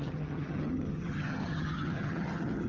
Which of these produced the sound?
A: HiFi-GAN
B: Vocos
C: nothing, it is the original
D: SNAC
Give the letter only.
A